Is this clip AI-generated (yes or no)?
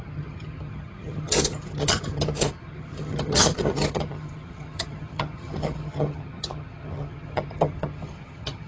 yes